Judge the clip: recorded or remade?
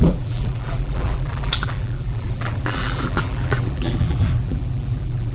remade